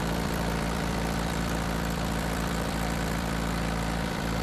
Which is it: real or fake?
fake